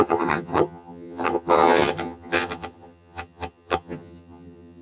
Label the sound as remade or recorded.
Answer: remade